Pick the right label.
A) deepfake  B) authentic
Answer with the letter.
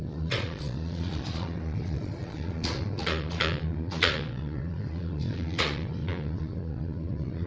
A